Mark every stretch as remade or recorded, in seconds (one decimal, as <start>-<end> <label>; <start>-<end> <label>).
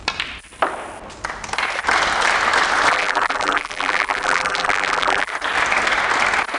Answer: 0.0-2.9 recorded; 2.9-5.3 remade; 5.3-6.6 recorded